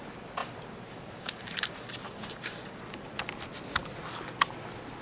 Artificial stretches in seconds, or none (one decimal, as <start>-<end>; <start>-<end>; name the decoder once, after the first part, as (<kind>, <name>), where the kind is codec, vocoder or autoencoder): 0.4-3.3 (vocoder, BigVGAN v2)